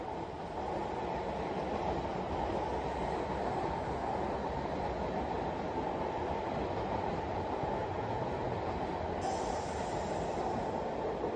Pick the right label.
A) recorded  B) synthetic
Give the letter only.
A